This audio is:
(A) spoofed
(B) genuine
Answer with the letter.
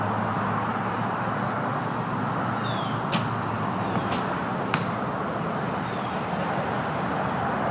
B